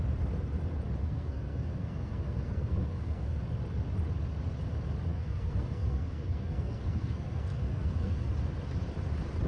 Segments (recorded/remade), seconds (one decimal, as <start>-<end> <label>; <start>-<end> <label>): 0.0-1.0 recorded; 1.0-3.4 remade; 3.4-5.1 recorded; 5.1-8.3 remade; 8.3-9.5 recorded